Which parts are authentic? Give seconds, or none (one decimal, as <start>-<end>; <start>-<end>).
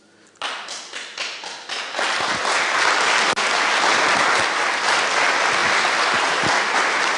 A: 0.0-7.2